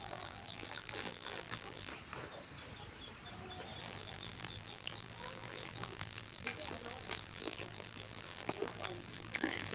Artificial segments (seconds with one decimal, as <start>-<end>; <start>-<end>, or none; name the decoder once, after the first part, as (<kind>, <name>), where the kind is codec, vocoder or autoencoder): 0.0-1.9 (vocoder, BigVGAN v2); 3.8-9.7